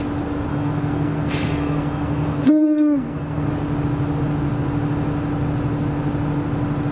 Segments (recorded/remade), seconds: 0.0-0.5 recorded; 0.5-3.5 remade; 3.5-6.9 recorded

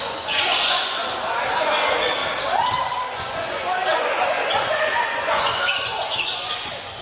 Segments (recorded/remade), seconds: 0.0-1.0 remade; 1.0-1.6 recorded; 1.6-2.2 remade; 2.2-2.8 recorded; 2.8-7.0 remade

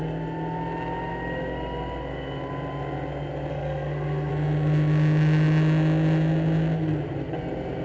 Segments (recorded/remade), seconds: 0.0-3.5 recorded; 3.5-4.3 remade; 4.3-7.8 recorded

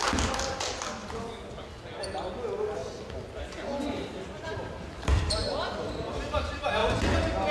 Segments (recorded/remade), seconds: 0.0-2.8 recorded; 2.8-6.1 remade; 6.1-7.5 recorded

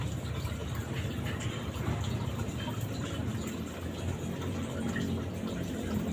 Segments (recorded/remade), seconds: 0.0-6.1 recorded